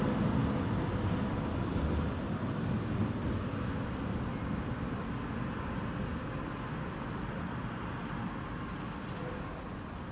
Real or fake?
real